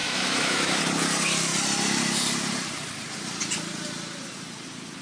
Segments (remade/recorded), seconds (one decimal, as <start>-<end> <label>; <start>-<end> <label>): 0.0-0.8 remade; 0.8-5.0 recorded